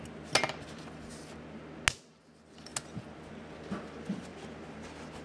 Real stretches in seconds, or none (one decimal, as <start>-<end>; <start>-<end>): 0.0-5.2